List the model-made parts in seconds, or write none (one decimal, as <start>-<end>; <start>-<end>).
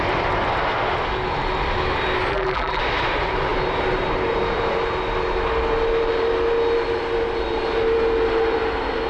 2.3-2.8